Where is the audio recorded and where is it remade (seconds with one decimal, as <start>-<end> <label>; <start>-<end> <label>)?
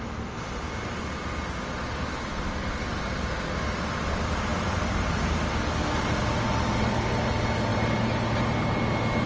0.0-9.3 recorded